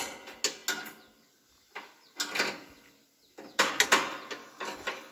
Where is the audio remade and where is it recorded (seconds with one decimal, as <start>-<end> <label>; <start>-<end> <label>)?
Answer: 0.0-4.4 recorded; 4.4-5.1 remade